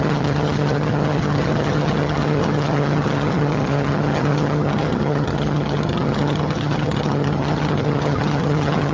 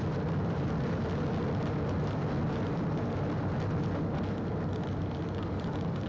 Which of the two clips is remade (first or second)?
first